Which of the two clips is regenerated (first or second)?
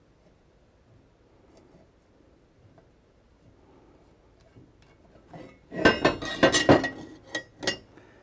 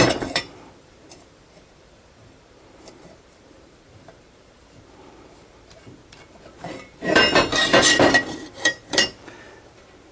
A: second